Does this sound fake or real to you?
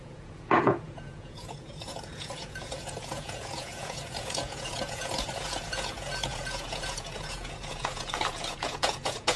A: fake